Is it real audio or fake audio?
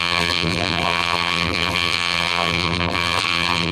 fake